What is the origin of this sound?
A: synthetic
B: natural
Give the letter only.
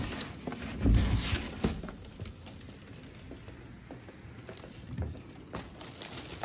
B